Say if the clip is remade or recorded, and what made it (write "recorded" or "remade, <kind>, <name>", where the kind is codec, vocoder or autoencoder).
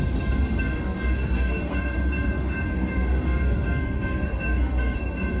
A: remade, codec, SNAC